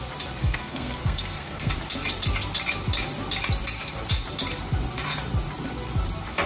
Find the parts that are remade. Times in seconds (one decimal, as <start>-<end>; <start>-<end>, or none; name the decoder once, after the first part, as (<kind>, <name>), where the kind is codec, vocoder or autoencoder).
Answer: 0.4-1.7 (codec, SNAC)